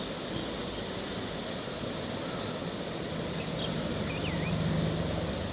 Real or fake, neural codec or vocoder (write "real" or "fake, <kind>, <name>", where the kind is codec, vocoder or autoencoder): real